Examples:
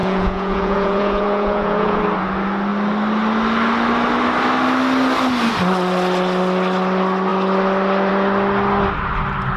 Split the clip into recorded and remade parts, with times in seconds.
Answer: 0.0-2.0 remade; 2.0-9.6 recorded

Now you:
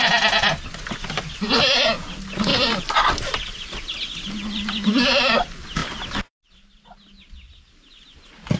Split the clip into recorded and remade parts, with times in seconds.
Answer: 0.0-2.5 recorded; 2.5-4.3 remade; 4.3-5.8 recorded; 5.8-6.5 remade; 6.5-8.6 recorded